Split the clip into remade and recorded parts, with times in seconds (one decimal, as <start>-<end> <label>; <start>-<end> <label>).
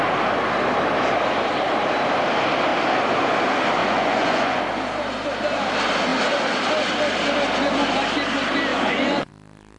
0.0-3.8 recorded; 3.8-4.6 remade; 4.6-8.7 recorded; 8.7-9.3 remade; 9.3-9.8 recorded